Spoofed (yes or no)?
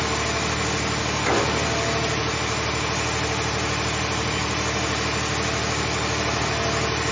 no